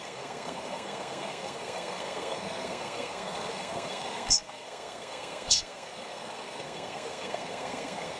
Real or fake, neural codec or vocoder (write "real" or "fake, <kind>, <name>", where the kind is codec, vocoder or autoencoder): fake, codec, SNAC